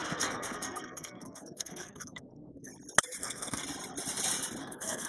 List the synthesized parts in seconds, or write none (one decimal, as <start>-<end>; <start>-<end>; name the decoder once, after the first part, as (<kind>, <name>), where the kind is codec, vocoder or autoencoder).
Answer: 0.0-2.7 (codec, SNAC); 3.2-3.6; 4.6-5.1